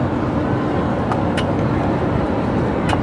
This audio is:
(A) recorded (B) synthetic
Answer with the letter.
A